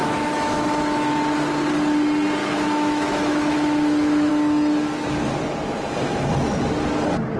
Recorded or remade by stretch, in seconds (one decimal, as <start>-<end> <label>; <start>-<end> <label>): 0.0-1.1 remade; 1.1-2.4 recorded; 2.4-4.3 remade; 4.3-7.4 recorded